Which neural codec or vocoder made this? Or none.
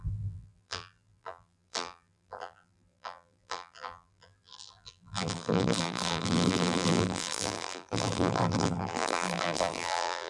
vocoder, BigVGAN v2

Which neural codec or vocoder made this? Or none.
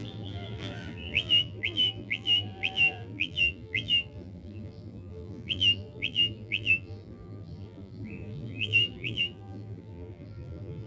vocoder, BigVGAN v2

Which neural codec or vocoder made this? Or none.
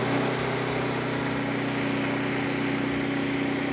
none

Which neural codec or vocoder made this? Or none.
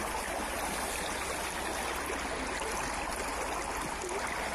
none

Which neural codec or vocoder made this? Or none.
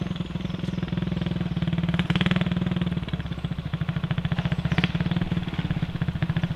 none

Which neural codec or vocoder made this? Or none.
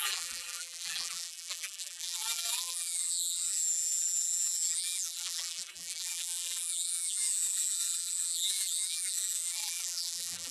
vocoder, BigVGAN v2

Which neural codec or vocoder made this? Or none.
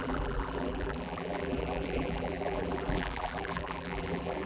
vocoder, BigVGAN v2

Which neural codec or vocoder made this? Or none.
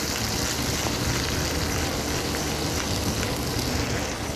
none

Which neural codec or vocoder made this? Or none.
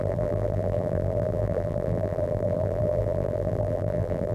vocoder, BigVGAN v2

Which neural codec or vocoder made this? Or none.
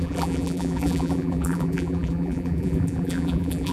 vocoder, BigVGAN v2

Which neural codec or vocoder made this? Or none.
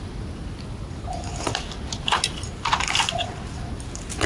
none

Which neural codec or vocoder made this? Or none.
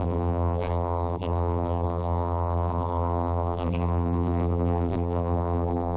vocoder, BigVGAN v2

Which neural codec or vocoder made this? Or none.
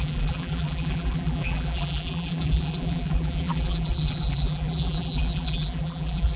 vocoder, BigVGAN v2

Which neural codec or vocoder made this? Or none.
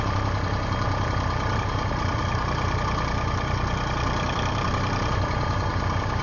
vocoder, BigVGAN v2